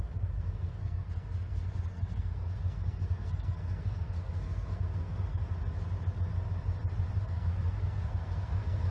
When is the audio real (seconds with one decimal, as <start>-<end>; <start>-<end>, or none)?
5.4-7.2